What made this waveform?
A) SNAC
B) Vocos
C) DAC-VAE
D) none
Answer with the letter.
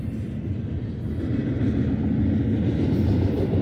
D